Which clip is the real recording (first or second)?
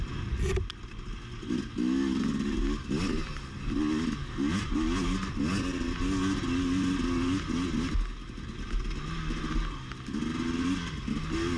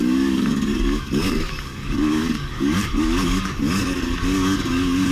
first